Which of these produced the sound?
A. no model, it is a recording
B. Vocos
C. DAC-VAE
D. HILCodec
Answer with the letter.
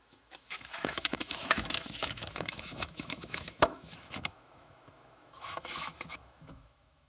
C